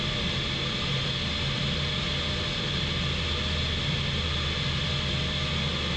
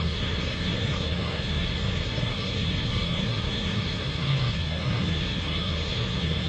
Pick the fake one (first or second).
second